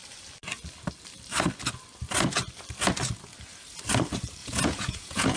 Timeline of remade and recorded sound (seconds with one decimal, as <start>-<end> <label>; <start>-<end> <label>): 0.0-4.4 recorded; 4.4-5.4 remade